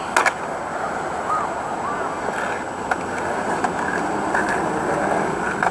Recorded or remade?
recorded